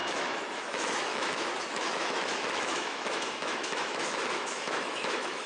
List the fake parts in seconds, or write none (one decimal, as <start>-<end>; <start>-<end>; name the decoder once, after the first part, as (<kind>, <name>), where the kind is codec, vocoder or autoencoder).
0.0-5.5 (autoencoder, DAC-VAE)